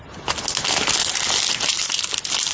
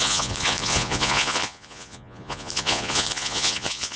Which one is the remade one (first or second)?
second